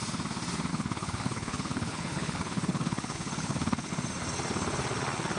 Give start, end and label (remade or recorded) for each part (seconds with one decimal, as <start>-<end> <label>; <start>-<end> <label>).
0.0-0.7 recorded; 0.7-3.9 remade; 3.9-5.4 recorded